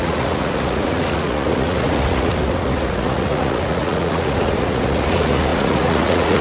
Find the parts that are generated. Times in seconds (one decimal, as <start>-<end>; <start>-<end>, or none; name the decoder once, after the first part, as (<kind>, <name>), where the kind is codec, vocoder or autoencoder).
0.0-6.4 (vocoder, Vocos)